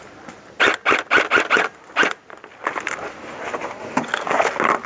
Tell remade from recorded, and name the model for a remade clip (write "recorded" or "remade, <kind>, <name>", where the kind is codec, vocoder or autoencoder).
recorded